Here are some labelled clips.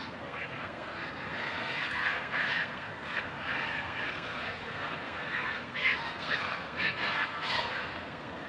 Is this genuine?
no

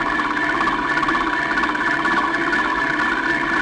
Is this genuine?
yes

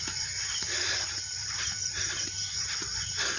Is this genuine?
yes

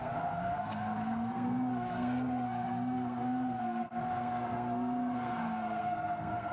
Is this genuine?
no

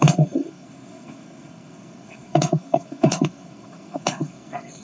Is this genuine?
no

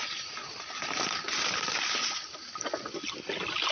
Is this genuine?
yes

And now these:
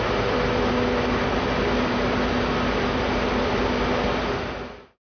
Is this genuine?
yes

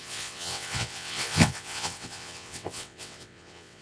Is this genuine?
no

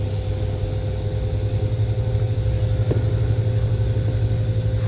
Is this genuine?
yes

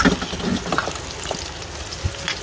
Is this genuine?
yes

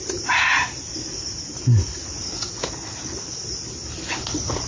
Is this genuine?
yes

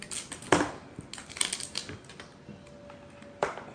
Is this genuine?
yes